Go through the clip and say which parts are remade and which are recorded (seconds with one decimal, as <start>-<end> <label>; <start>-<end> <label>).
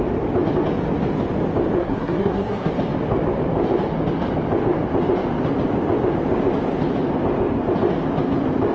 0.0-1.8 recorded; 1.8-2.7 remade; 2.7-8.7 recorded